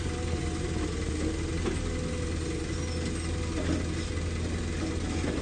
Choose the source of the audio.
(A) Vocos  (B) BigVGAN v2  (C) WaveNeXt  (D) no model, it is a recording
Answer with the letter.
D